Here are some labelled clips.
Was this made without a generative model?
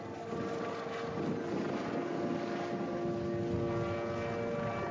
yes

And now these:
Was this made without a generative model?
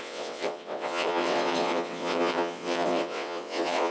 no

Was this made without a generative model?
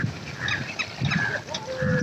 yes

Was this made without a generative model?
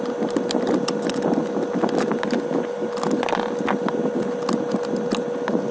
yes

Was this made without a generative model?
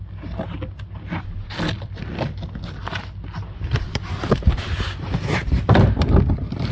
yes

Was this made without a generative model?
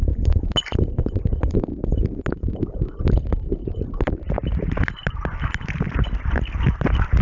yes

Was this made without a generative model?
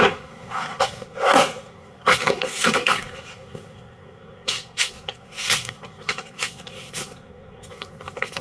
no